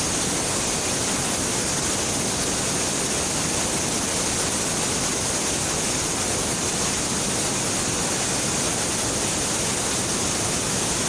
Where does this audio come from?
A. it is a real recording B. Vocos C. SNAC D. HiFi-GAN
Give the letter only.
A